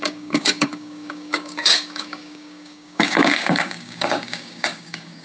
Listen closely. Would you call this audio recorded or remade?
remade